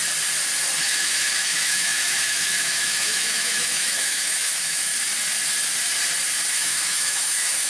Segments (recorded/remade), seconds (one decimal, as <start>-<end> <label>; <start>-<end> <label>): 0.0-0.8 recorded; 0.8-4.9 remade; 4.9-6.5 recorded; 6.5-7.7 remade